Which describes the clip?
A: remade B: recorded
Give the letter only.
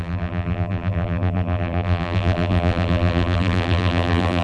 A